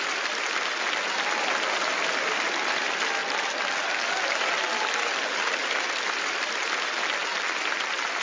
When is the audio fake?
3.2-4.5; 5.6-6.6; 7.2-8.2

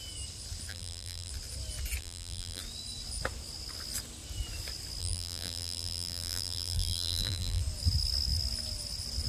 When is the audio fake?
0.7-1.3; 2.0-2.6; 5.0-7.6

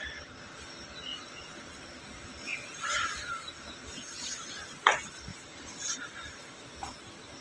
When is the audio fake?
1.1-2.0; 2.5-4.5; 5.3-6.0